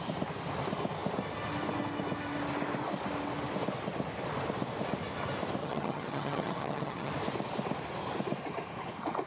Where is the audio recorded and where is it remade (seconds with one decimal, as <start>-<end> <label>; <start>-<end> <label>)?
0.0-5.6 recorded; 5.6-7.1 remade; 7.1-9.3 recorded